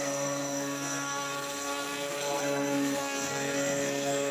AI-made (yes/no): yes